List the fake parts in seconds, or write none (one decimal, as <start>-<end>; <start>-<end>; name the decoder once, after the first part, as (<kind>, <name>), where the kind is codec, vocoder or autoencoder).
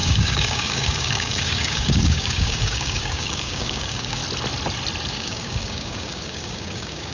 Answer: 0.0-4.2 (codec, DAC); 5.1-7.1